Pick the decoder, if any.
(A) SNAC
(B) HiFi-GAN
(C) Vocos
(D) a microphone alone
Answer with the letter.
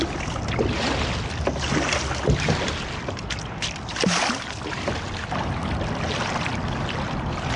D